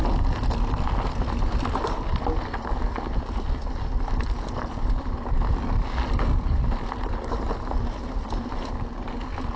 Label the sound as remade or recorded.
recorded